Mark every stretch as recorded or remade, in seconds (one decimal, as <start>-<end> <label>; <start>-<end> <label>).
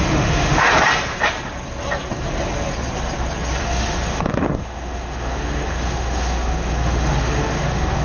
0.0-0.7 remade; 0.7-3.6 recorded; 3.6-8.0 remade